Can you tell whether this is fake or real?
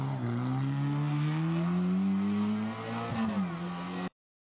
real